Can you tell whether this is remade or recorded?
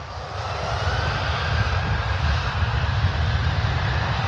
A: recorded